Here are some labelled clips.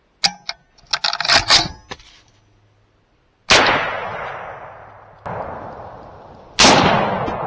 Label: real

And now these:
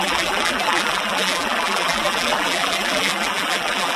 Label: fake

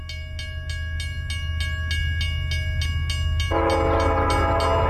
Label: real